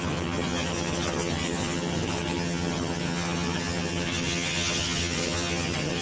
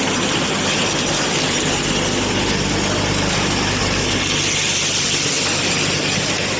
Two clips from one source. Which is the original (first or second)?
second